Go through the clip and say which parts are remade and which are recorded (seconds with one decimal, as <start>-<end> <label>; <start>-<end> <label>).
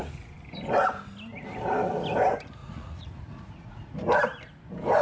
0.0-2.6 recorded; 2.6-3.9 remade; 3.9-5.0 recorded